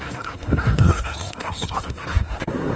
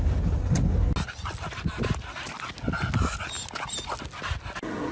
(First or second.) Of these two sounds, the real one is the second